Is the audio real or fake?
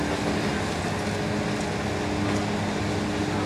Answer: real